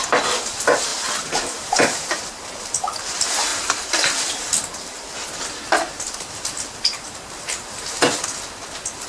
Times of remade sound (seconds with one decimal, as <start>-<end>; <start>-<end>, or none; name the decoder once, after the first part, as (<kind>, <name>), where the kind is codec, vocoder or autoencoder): 0.9-2.2 (vocoder, BigVGAN v2)